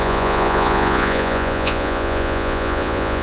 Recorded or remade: remade